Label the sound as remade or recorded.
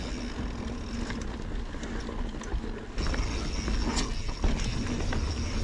recorded